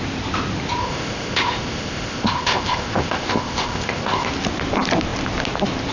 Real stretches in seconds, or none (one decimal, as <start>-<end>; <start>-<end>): 0.0-0.8; 4.3-5.9